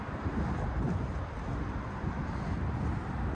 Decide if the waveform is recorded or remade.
recorded